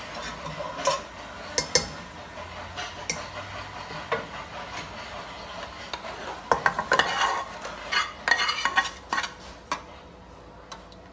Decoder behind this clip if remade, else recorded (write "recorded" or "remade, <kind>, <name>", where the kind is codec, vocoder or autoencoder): recorded